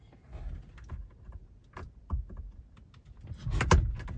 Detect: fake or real real